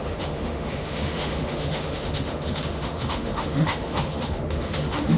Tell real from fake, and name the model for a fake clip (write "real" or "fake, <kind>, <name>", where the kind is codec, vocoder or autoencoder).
fake, autoencoder, DAC-VAE